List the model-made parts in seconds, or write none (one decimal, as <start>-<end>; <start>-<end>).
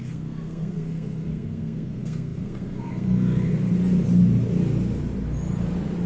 0.0-3.7